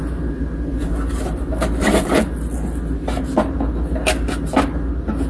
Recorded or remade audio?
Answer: recorded